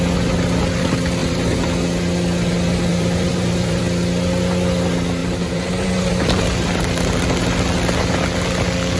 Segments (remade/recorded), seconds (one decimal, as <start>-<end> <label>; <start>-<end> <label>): 0.0-1.2 recorded; 1.2-1.7 remade; 1.7-2.9 recorded; 2.9-3.8 remade; 3.8-5.2 recorded; 5.2-6.9 remade; 6.9-9.0 recorded

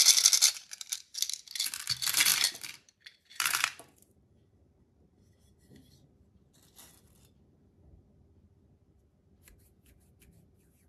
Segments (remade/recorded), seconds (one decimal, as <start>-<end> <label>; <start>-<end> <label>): 0.0-2.3 recorded; 2.3-5.6 remade; 5.6-10.9 recorded

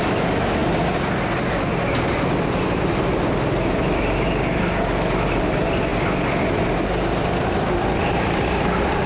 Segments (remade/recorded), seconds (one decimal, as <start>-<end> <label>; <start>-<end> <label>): 0.0-9.1 recorded

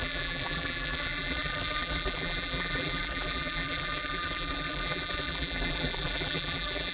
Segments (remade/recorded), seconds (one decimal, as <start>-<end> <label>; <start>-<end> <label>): 0.0-6.9 remade

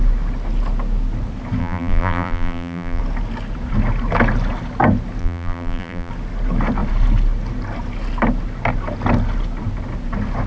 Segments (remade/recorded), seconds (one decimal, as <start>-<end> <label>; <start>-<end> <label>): 0.0-1.6 recorded; 1.6-3.0 remade; 3.0-5.2 recorded; 5.2-6.1 remade; 6.1-10.5 recorded

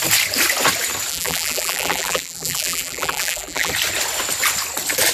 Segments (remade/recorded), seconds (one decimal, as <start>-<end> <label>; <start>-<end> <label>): 0.0-1.1 recorded; 1.1-3.7 remade; 3.7-5.1 recorded

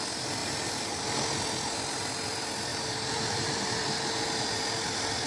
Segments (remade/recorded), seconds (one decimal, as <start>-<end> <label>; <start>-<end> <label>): 0.0-0.4 recorded; 0.4-1.0 remade; 1.0-2.7 recorded; 2.7-4.6 remade; 4.6-5.3 recorded